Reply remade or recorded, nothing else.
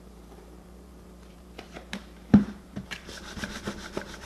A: remade